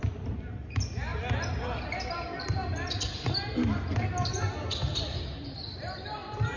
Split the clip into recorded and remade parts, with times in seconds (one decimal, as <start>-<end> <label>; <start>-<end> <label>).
0.0-6.6 recorded